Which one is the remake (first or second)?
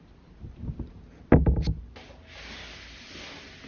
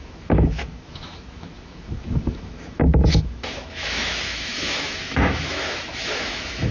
second